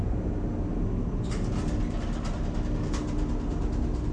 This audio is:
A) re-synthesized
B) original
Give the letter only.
B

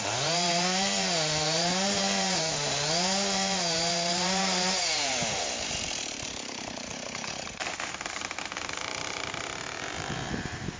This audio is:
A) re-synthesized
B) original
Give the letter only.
A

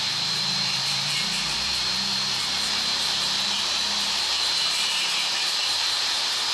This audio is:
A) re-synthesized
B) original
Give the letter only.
A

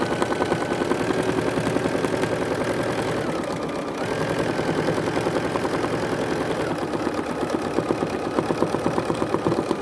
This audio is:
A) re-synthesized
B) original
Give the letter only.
B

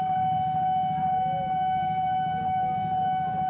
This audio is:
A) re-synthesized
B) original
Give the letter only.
A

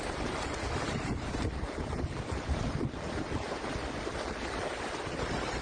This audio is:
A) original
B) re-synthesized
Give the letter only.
B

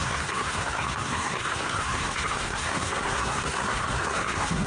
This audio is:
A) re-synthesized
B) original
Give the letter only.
A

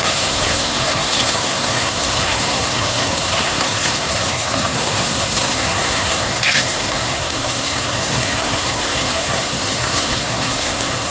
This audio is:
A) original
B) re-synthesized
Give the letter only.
B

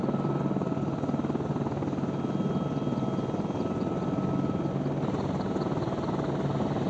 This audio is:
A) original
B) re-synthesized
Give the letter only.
A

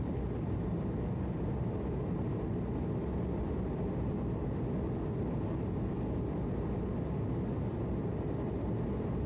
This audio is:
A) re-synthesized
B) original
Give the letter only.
B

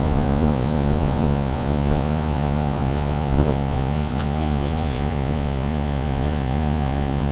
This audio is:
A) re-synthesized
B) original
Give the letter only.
A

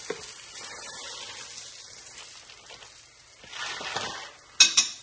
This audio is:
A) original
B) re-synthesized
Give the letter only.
A